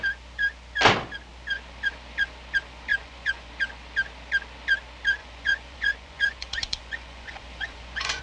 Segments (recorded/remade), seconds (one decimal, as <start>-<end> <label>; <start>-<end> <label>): 0.0-2.9 recorded; 2.9-3.5 remade; 3.5-5.2 recorded; 5.2-8.2 remade

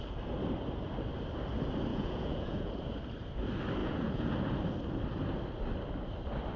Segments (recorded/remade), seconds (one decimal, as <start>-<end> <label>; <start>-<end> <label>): 0.0-1.9 recorded; 1.9-2.7 remade; 2.7-3.8 recorded; 3.8-4.3 remade; 4.3-6.6 recorded